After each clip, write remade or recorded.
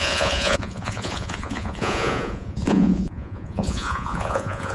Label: remade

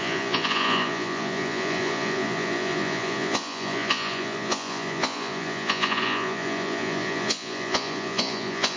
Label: remade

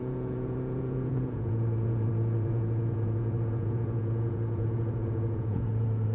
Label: remade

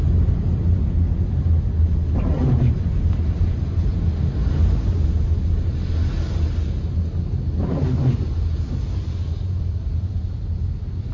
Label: recorded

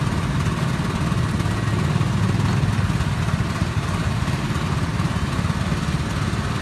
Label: recorded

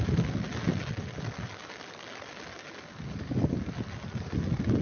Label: recorded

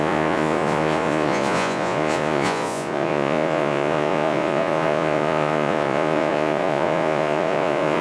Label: remade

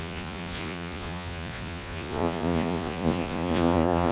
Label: remade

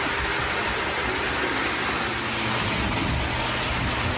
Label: recorded